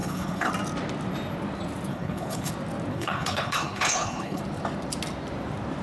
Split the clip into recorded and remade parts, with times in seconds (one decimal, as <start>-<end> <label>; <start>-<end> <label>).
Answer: 0.0-0.5 remade; 0.5-1.9 recorded; 1.9-2.5 remade; 2.5-2.9 recorded; 2.9-4.4 remade; 4.4-5.8 recorded